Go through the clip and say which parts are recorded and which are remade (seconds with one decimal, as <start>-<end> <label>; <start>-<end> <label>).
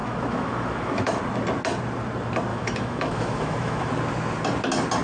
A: 0.0-1.2 remade; 1.2-2.5 recorded; 2.5-3.9 remade; 3.9-5.0 recorded